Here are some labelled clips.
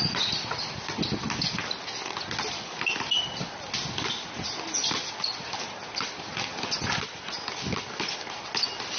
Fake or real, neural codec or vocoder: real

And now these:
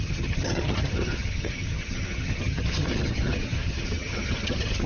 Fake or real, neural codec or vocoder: fake, vocoder, HiFi-GAN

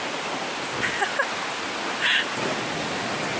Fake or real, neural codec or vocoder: real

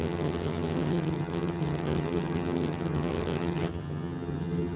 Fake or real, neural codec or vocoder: fake, vocoder, HiFi-GAN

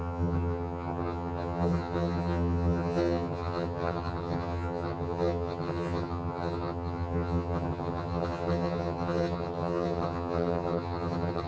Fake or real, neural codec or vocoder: fake, vocoder, HiFi-GAN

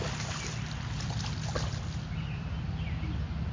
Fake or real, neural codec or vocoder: real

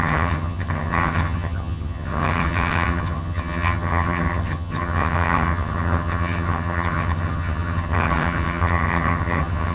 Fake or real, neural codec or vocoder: fake, vocoder, HiFi-GAN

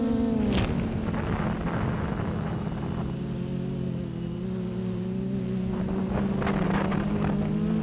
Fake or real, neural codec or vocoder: real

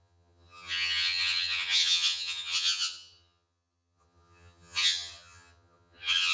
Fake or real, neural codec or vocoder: fake, vocoder, HiFi-GAN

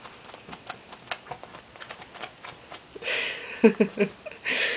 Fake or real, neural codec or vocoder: real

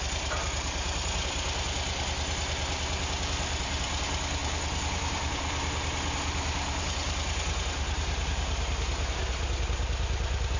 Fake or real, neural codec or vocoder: real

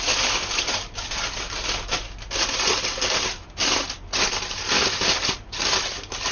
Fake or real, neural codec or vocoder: real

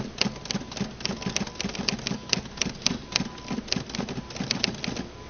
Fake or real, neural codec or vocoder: real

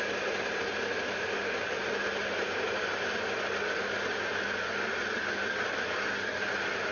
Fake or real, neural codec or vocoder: real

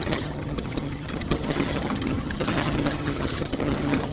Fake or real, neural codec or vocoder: fake, vocoder, HiFi-GAN